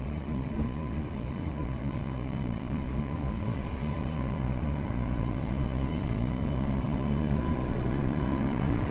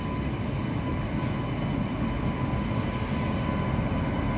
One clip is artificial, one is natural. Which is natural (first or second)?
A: second